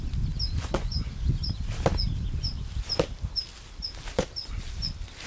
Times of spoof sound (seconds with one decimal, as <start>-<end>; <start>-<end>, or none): 0.6-1.1